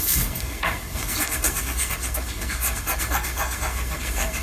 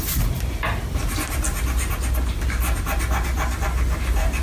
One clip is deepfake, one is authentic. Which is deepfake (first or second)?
first